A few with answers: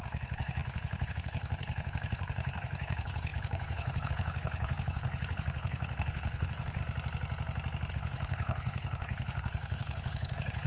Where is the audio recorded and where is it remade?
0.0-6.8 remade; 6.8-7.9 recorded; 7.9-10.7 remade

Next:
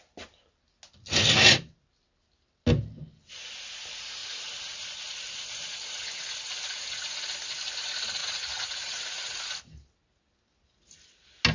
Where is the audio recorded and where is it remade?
0.0-8.2 recorded; 8.2-9.4 remade; 9.4-11.5 recorded

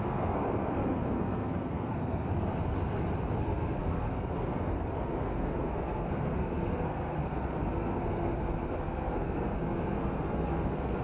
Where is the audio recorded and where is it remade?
0.0-2.3 remade; 2.3-3.4 recorded; 3.4-11.0 remade

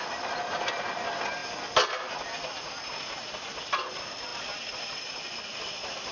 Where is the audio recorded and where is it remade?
0.0-1.4 remade; 1.4-3.9 recorded; 3.9-6.1 remade

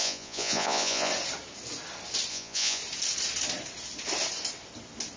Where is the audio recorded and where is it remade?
0.0-1.1 remade; 1.1-2.3 recorded; 2.3-2.8 remade; 2.8-5.2 recorded

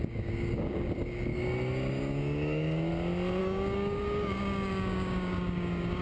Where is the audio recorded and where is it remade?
0.0-1.3 remade; 1.3-2.0 recorded; 2.0-2.9 remade; 2.9-3.4 recorded; 3.4-6.0 remade

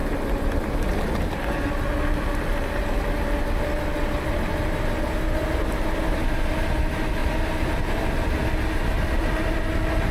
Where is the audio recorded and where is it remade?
0.0-7.2 recorded; 7.2-8.1 remade; 8.1-10.1 recorded

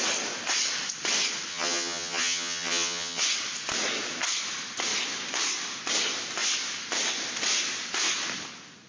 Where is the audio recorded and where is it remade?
0.0-1.5 recorded; 1.5-3.2 remade; 3.2-8.9 recorded